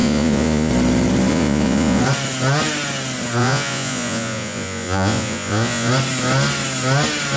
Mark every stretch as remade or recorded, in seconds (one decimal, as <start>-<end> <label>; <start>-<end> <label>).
0.0-0.7 remade; 0.7-1.3 recorded; 1.3-2.0 remade; 2.0-3.4 recorded; 3.4-5.9 remade; 5.9-7.4 recorded